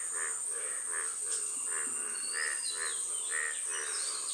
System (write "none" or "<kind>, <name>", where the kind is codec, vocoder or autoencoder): none